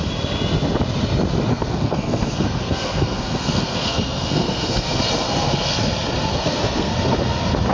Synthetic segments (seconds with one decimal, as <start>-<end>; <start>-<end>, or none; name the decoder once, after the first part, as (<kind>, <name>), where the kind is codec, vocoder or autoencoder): 1.5-5.0 (codec, SNAC); 6.3-6.9